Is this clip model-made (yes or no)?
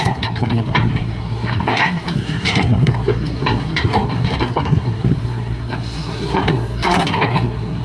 yes